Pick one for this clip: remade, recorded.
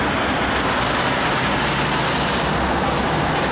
recorded